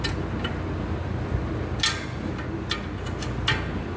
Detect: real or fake real